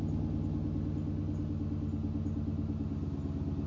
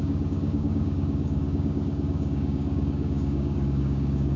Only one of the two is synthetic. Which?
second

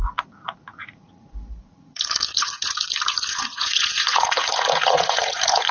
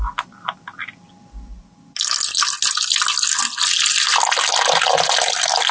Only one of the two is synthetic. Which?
first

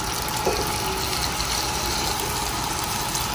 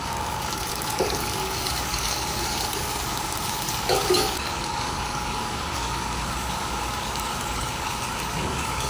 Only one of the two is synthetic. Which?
second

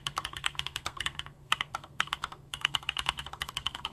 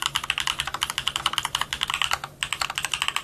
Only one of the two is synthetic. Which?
first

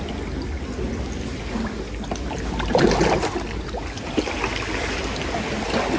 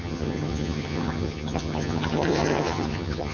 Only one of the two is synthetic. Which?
second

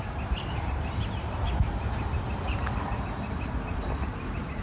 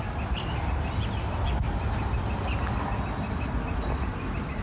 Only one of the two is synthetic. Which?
first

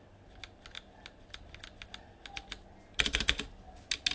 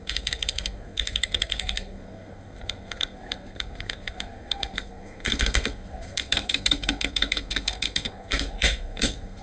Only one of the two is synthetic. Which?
second